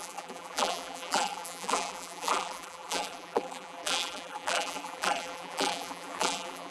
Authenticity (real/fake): fake